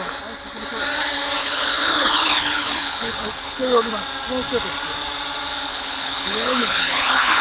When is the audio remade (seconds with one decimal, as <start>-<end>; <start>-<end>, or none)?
1.4-3.9; 5.7-7.4